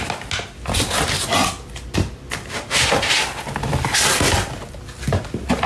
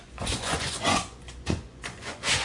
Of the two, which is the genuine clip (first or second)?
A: first